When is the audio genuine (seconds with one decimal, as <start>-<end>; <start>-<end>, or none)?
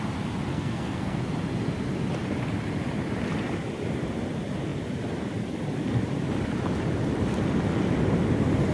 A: 0.0-0.5; 1.2-8.7